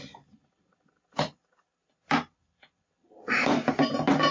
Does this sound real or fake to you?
real